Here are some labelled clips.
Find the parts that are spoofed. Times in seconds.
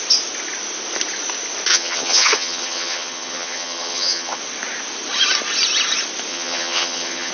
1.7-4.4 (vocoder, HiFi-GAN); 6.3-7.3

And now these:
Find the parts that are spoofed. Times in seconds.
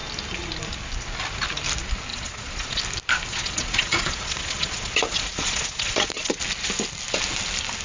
2.1-2.8 (vocoder, Vocos); 3.3-6.4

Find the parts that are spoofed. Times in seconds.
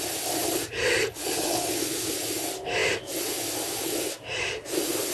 1.0-1.7 (codec, HILCodec)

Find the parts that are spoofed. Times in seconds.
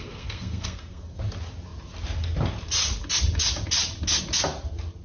0.0-1.2 (codec, SNAC)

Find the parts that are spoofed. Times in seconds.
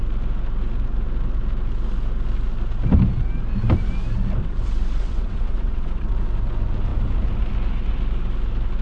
4.4-6.1 (vocoder, WaveNeXt)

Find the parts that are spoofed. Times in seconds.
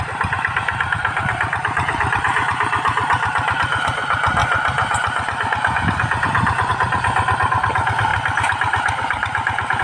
1.0-3.6 (vocoder, BigVGAN v2); 8.1-9.8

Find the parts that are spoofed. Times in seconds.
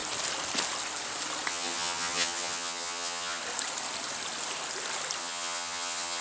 1.5-3.4 (vocoder, HiFi-GAN); 5.2-6.2